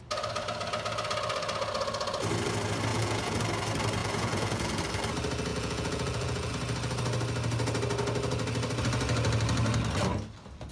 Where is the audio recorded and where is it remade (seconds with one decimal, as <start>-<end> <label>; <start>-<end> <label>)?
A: 0.0-2.9 recorded; 2.9-3.4 remade; 3.4-4.0 recorded; 4.0-4.8 remade; 4.8-5.5 recorded; 5.5-6.5 remade; 6.5-10.7 recorded